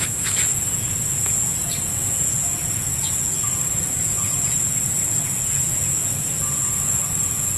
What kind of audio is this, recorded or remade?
remade